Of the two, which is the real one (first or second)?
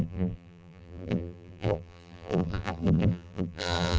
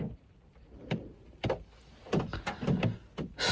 second